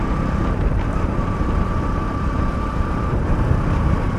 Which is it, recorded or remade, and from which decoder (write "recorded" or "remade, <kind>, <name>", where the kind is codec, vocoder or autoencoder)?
remade, vocoder, BigVGAN v2